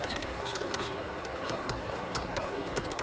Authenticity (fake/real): fake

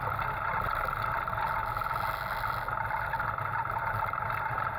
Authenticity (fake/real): real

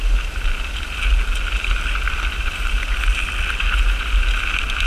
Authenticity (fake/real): real